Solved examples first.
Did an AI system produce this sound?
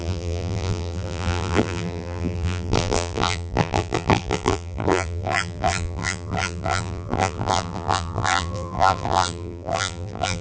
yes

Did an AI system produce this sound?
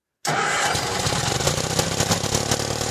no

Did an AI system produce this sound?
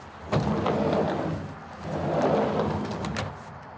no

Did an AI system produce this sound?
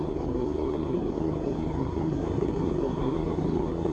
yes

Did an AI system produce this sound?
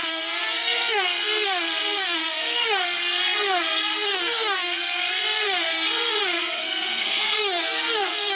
yes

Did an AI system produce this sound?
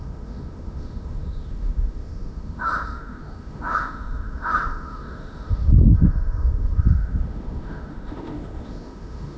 yes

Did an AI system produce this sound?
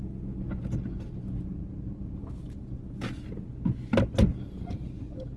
no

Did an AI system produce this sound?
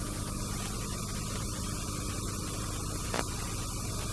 no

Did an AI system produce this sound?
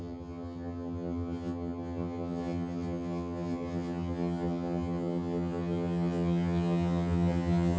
yes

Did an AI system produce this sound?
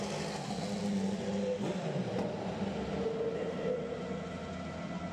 no